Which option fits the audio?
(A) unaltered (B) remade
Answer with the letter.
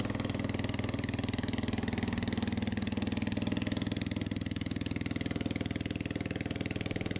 A